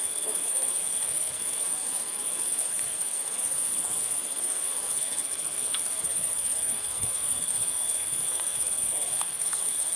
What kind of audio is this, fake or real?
fake